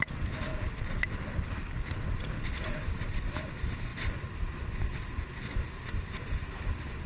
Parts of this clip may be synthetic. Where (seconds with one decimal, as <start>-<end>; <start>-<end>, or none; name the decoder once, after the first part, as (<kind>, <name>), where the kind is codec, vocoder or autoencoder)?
none